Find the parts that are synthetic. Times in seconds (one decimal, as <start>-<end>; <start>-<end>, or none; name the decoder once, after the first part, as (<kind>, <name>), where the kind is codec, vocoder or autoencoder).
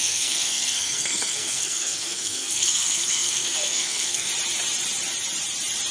0.0-4.3 (codec, SNAC)